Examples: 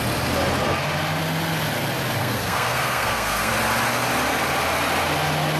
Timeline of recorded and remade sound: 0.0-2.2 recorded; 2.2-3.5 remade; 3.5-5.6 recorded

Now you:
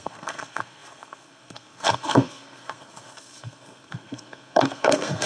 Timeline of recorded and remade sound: 0.0-5.3 remade

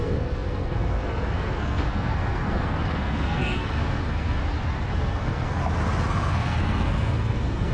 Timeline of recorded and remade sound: 0.0-4.4 remade; 4.4-4.9 recorded; 4.9-5.6 remade; 5.6-6.1 recorded; 6.1-7.7 remade

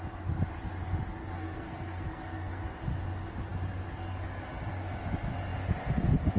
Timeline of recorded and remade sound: 0.0-1.2 recorded; 1.2-2.6 remade; 2.6-6.4 recorded

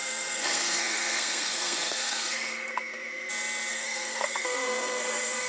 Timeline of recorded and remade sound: 0.0-3.3 remade; 3.3-3.7 recorded; 3.7-5.5 remade